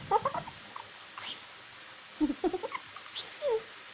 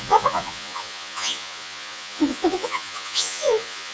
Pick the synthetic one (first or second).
second